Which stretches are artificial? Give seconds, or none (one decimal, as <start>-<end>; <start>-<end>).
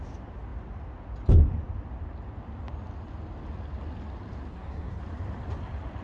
4.5-5.0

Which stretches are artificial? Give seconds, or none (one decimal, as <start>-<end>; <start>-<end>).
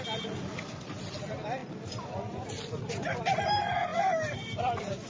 none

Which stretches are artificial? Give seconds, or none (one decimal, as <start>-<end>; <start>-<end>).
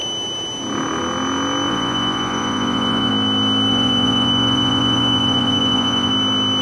1.7-3.1; 3.7-6.1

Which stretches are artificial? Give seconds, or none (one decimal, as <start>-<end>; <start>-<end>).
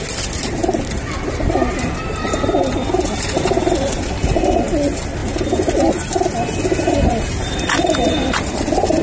none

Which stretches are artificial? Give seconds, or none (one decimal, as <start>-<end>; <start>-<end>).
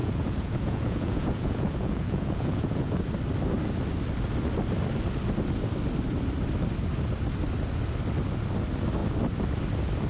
0.0-2.9